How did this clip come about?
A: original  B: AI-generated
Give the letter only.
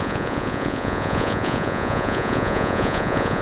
B